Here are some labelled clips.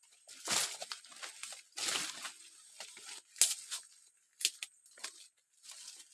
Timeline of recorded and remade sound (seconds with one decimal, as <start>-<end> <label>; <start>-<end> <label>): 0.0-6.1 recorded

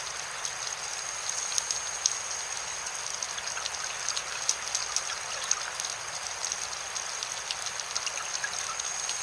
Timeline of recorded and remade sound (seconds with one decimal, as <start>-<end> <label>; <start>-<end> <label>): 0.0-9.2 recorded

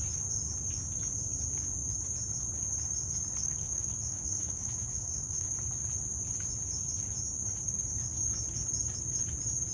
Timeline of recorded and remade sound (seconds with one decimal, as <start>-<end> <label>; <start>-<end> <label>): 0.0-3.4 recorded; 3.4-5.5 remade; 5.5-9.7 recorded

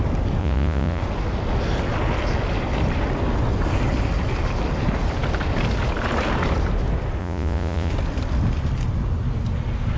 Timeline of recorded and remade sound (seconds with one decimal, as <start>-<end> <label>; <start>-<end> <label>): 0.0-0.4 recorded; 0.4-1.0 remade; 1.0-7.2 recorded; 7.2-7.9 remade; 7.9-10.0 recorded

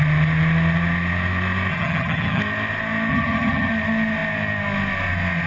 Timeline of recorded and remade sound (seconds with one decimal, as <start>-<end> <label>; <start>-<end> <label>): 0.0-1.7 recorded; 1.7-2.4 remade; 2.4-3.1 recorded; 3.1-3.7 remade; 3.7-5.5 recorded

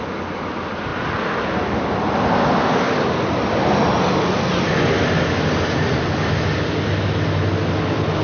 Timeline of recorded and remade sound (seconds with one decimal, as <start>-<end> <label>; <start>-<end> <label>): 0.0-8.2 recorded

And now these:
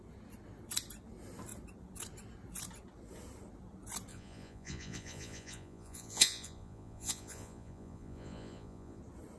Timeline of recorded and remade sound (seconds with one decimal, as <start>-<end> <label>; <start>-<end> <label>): 0.0-4.1 recorded; 4.1-9.0 remade; 9.0-9.4 recorded